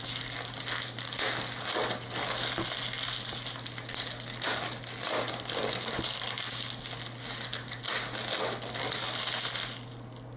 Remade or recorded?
recorded